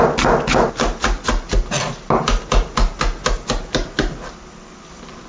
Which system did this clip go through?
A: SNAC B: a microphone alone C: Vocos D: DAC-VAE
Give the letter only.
B